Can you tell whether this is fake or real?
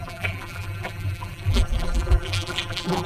fake